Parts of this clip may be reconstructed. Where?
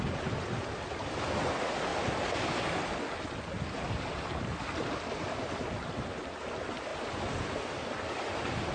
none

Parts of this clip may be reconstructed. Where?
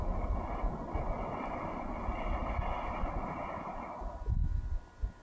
2.4-3.6 (vocoder, BigVGAN v2)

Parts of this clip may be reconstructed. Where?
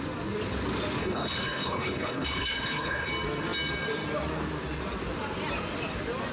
1.0-3.1 (codec, HILCodec)